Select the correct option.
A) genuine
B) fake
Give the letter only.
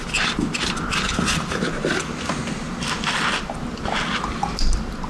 A